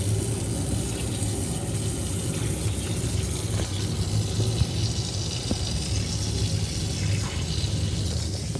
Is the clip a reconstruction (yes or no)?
no